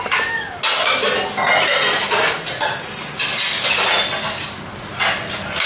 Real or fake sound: real